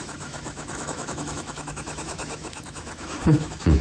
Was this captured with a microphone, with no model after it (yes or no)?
no